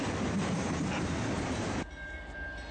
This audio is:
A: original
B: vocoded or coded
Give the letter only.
A